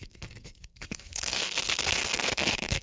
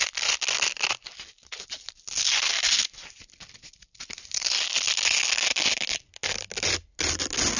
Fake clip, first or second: first